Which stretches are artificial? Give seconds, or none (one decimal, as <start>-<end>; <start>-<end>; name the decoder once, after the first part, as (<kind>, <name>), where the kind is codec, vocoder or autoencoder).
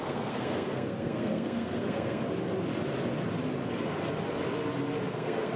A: 0.0-2.2 (codec, SNAC); 5.1-5.6